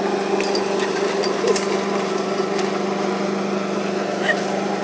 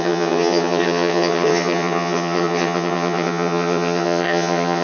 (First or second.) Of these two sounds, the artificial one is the second